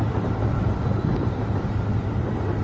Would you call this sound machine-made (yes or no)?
no